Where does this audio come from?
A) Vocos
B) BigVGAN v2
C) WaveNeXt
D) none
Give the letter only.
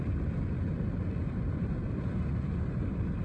B